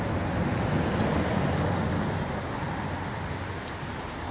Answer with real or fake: real